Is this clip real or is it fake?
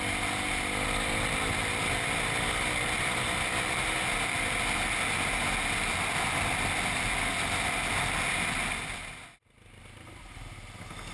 real